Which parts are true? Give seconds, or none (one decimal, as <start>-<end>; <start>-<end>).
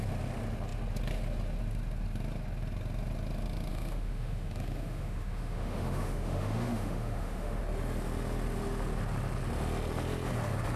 0.0-3.7; 7.6-10.8